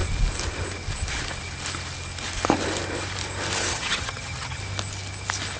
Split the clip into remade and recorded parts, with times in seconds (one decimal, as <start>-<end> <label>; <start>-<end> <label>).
0.0-3.7 recorded; 3.7-4.6 remade; 4.6-5.6 recorded